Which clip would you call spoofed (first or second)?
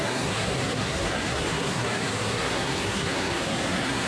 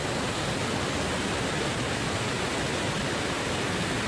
first